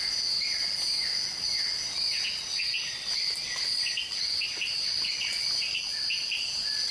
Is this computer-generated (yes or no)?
no